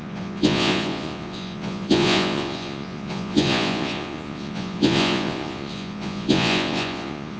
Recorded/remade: remade